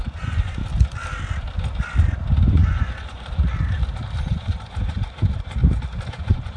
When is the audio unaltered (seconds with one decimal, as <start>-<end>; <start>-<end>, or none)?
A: 0.6-2.5; 3.4-4.3; 5.6-6.1